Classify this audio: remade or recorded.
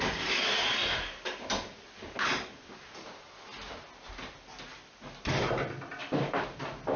recorded